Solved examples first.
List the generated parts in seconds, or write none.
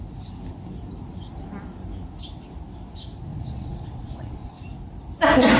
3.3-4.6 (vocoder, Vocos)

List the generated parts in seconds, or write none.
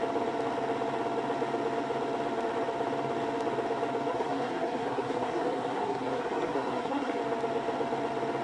4.1-7.2 (codec, SNAC)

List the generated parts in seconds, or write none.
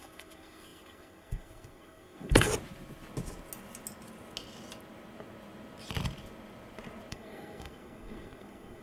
0.0-2.5 (codec, SNAC); 7.1-8.8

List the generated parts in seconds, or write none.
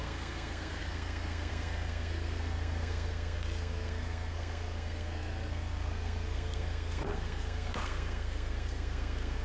0.0-9.4 (codec, SNAC)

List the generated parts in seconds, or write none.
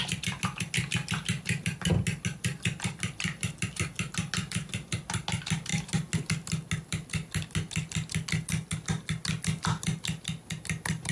none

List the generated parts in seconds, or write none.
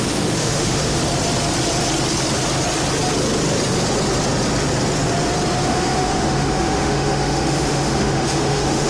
0.0-1.0 (autoencoder, DAC-VAE); 5.6-8.9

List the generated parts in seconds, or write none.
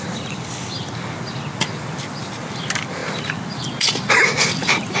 none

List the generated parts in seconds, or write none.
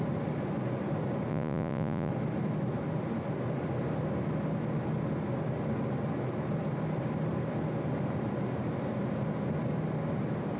1.3-2.1 (vocoder, Vocos)